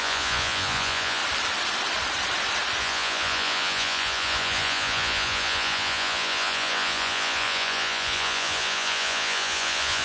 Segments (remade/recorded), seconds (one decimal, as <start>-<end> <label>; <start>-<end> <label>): 0.0-1.2 remade; 1.2-2.8 recorded; 2.8-10.0 remade

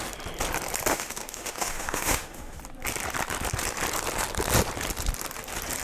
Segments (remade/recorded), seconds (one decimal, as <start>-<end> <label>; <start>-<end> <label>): 0.0-0.9 recorded; 0.9-2.6 remade; 2.6-5.8 recorded

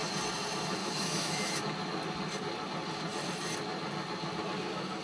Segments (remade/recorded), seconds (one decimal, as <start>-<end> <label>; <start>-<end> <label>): 0.0-0.8 recorded; 0.8-1.6 remade; 1.6-5.0 recorded

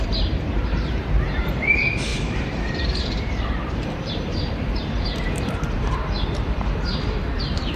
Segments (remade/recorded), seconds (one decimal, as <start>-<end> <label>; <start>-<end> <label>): 0.0-7.8 remade

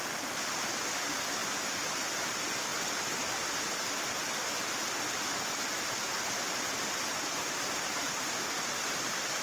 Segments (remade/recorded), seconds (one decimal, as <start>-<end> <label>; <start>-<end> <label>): 0.0-7.4 recorded; 7.4-8.4 remade; 8.4-9.4 recorded